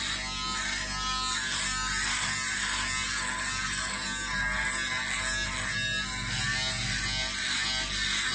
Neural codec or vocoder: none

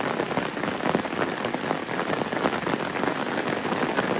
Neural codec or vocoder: none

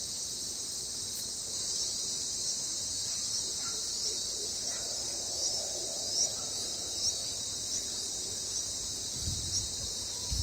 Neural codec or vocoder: none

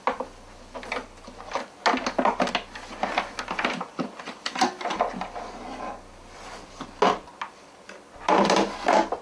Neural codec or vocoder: none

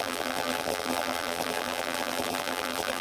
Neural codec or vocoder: vocoder, BigVGAN v2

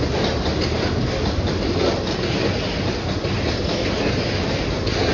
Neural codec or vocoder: none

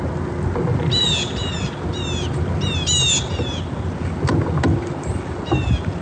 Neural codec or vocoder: none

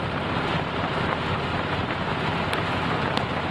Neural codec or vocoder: none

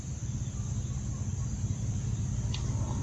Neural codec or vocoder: none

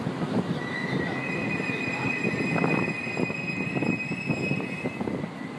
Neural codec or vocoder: none